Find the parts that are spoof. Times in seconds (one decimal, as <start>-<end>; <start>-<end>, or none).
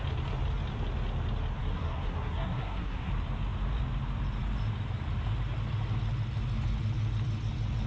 1.6-3.1